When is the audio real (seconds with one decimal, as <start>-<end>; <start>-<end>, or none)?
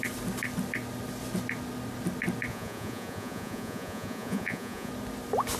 0.0-2.5; 4.9-5.6